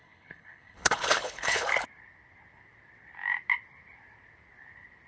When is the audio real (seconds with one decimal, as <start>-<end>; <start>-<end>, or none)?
1.7-5.1